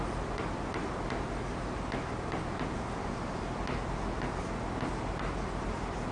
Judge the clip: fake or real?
real